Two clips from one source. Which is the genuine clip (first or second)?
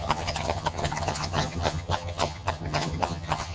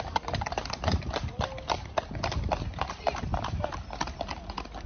second